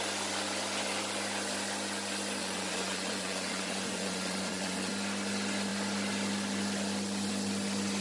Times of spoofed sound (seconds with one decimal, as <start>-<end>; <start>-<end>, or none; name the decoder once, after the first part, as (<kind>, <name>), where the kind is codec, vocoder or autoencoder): 2.4-4.9 (vocoder, Vocos)